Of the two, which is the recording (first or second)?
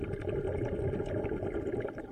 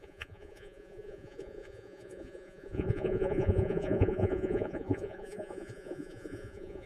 first